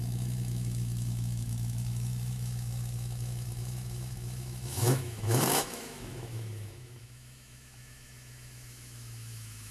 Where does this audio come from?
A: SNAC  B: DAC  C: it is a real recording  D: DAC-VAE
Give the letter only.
D